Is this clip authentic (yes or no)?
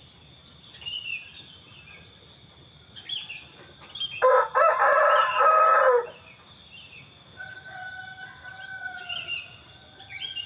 yes